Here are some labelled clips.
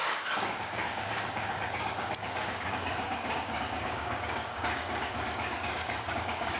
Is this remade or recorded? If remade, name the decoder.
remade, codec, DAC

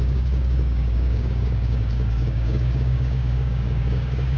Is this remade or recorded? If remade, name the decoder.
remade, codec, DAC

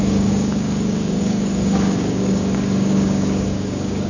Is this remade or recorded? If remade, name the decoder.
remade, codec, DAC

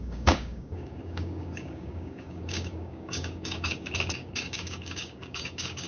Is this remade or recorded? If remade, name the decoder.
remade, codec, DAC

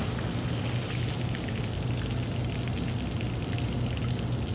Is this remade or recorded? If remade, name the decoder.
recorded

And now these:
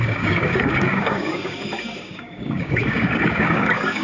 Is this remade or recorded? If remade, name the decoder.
remade, codec, DAC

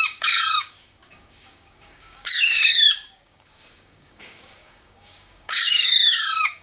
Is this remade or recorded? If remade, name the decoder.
remade, codec, DAC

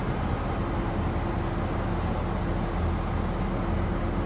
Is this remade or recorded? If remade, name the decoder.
recorded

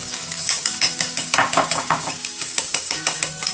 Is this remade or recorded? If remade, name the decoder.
remade, codec, DAC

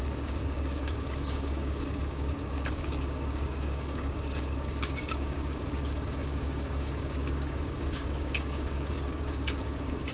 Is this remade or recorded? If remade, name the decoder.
remade, codec, DAC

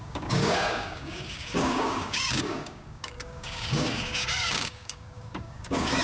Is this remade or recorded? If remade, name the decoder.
remade, codec, DAC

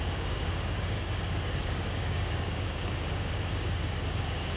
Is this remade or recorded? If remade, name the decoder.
remade, codec, DAC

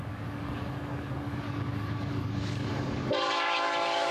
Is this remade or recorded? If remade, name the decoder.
remade, codec, DAC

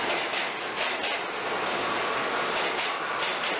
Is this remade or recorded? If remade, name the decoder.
recorded